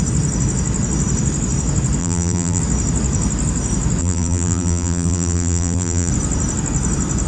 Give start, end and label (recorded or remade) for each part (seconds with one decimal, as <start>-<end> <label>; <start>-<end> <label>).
0.0-2.0 recorded; 2.0-2.6 remade; 2.6-4.0 recorded; 4.0-6.1 remade; 6.1-7.3 recorded

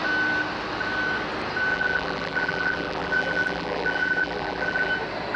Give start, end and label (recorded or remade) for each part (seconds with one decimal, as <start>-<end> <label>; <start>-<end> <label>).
0.0-1.7 recorded; 1.7-4.9 remade; 4.9-5.4 recorded

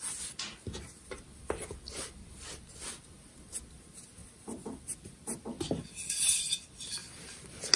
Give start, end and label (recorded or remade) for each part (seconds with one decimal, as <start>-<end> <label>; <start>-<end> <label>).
0.0-7.8 recorded

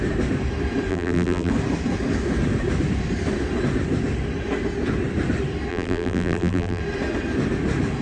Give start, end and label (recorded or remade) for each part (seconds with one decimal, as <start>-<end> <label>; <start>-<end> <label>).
0.0-0.9 recorded; 0.9-1.5 remade; 1.5-5.7 recorded; 5.7-6.8 remade; 6.8-8.0 recorded

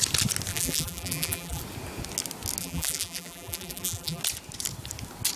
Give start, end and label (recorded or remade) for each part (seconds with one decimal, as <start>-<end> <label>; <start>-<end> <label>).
0.0-0.5 recorded; 0.5-1.6 remade; 1.6-2.6 recorded; 2.6-4.2 remade; 4.2-5.4 recorded